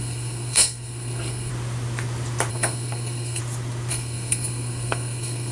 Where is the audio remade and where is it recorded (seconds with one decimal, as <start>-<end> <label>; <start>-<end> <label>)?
0.0-1.5 remade; 1.5-2.5 recorded; 2.5-3.4 remade; 3.4-3.9 recorded; 3.9-5.5 remade